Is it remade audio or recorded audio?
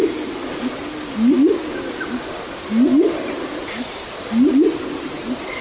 recorded